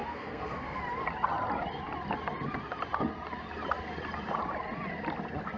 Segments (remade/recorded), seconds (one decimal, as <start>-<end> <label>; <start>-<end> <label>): 0.0-0.8 remade; 0.8-5.6 recorded